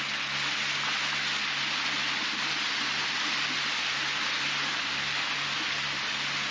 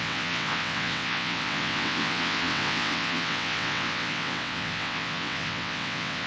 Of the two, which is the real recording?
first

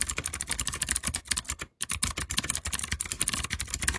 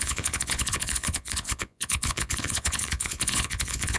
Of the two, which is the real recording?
first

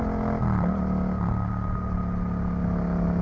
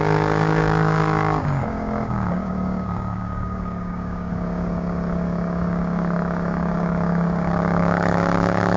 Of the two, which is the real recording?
first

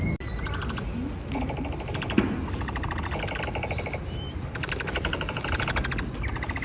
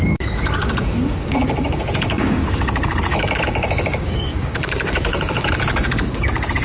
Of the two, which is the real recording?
first